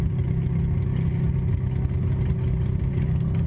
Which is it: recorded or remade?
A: recorded